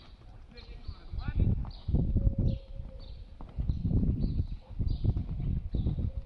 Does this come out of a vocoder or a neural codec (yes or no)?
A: no